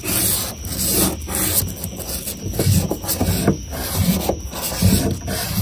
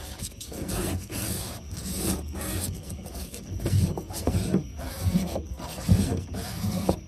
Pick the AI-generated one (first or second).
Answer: second